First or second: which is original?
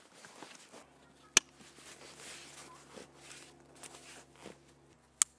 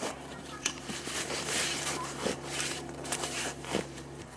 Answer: first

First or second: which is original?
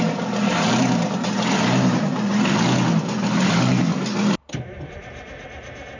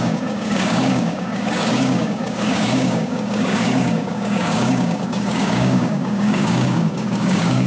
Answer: first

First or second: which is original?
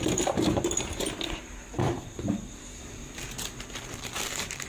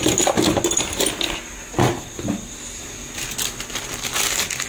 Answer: second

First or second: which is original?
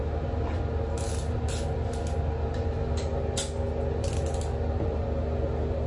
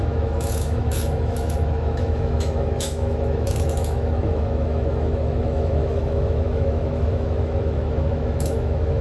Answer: first